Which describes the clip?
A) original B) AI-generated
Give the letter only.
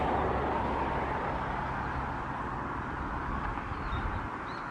A